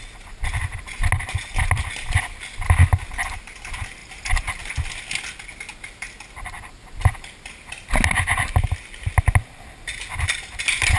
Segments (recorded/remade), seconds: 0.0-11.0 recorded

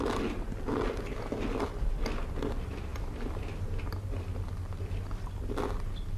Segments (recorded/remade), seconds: 0.0-6.2 recorded

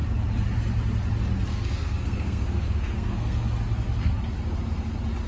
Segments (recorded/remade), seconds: 0.0-1.5 recorded; 1.5-3.5 remade; 3.5-5.3 recorded

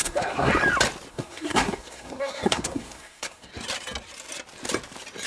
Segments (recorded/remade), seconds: 0.0-0.5 remade; 0.5-1.1 recorded; 1.1-3.5 remade; 3.5-5.3 recorded

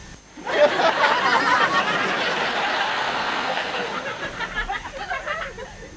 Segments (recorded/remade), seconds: 0.0-2.9 recorded; 2.9-3.7 remade; 3.7-6.0 recorded

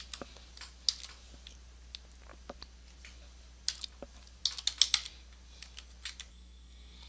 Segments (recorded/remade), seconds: 0.0-6.3 recorded; 6.3-7.1 remade